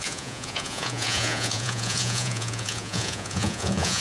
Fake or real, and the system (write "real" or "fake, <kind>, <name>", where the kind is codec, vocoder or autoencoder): fake, vocoder, Vocos